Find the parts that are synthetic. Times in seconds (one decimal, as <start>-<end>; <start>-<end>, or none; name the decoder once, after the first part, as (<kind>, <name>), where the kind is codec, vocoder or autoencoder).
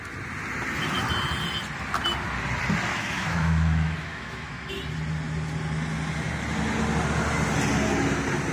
2.9-4.7 (autoencoder, DAC-VAE)